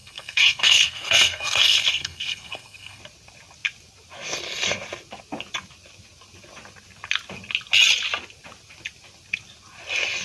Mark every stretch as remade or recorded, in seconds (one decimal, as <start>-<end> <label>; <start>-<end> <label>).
0.0-3.0 remade; 3.0-10.2 recorded